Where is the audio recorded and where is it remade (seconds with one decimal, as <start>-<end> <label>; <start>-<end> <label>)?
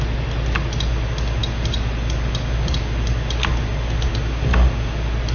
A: 0.0-5.3 recorded